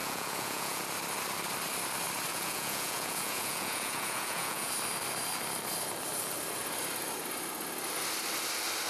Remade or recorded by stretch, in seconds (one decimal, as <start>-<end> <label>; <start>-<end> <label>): 0.0-0.8 remade; 0.8-2.3 recorded; 2.3-4.7 remade; 4.7-8.9 recorded